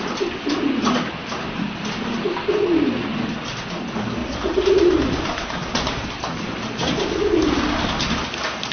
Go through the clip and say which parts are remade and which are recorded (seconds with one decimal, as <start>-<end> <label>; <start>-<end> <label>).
0.0-4.2 recorded; 4.2-7.3 remade; 7.3-8.7 recorded